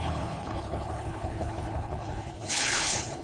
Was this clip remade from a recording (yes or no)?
yes